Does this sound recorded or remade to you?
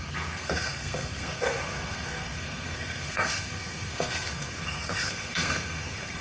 remade